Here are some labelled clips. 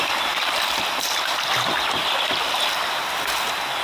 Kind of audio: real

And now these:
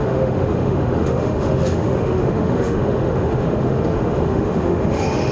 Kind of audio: fake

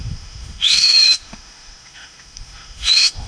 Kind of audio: fake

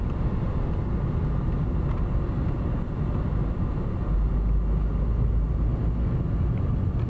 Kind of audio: real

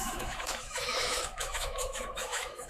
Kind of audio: fake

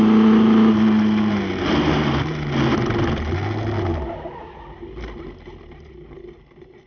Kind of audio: real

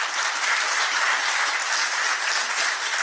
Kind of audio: real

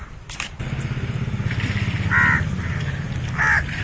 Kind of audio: real